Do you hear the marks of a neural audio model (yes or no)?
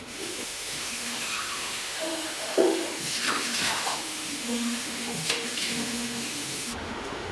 yes